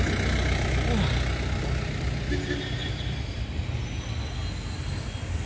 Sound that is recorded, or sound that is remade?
recorded